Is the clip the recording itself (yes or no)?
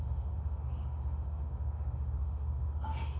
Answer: no